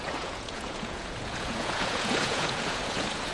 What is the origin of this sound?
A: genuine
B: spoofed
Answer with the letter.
B